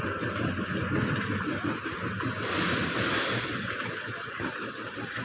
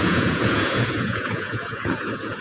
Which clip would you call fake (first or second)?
second